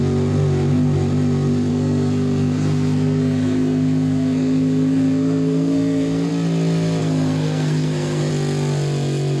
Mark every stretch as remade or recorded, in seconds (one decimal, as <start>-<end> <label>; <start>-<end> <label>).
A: 0.0-1.7 recorded; 1.7-6.3 remade; 6.3-7.0 recorded; 7.0-8.3 remade; 8.3-9.4 recorded